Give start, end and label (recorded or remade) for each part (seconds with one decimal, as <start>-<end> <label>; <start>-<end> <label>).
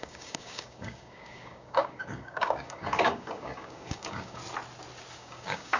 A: 0.0-4.4 remade; 4.4-5.2 recorded; 5.2-5.8 remade